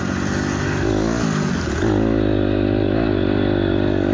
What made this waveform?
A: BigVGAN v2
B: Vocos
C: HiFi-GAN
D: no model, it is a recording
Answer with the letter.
D